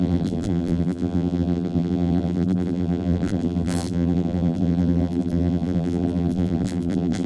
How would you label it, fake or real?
fake